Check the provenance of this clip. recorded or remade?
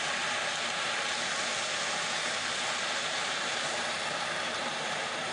remade